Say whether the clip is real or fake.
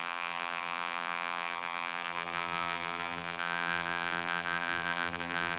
fake